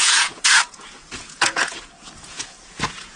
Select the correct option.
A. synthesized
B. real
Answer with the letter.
A